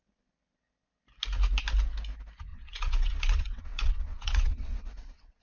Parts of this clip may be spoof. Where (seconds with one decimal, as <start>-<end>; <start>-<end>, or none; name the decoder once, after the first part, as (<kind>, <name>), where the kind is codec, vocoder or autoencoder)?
2.5-5.4 (vocoder, WaveNeXt)